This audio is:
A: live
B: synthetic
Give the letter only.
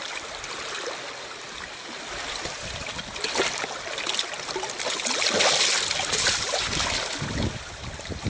A